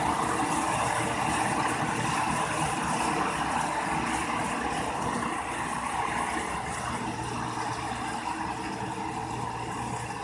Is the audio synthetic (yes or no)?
no